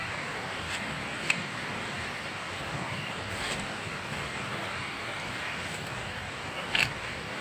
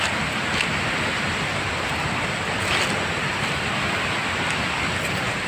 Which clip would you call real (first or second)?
second